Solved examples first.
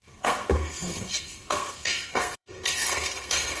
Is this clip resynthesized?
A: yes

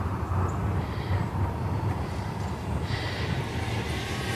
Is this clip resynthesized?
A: yes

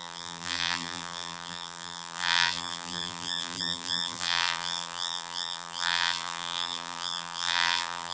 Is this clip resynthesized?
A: yes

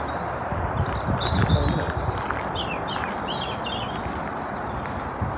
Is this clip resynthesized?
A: no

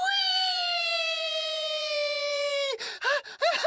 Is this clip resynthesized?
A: no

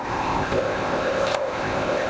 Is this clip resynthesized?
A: yes